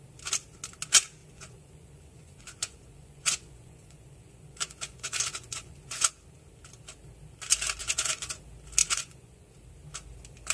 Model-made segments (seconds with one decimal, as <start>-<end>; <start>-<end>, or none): 1.2-6.1; 7.8-8.4; 8.8-9.5